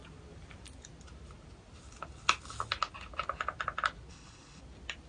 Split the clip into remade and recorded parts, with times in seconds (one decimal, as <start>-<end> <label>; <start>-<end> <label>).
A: 0.0-4.1 recorded; 4.1-4.6 remade; 4.6-5.1 recorded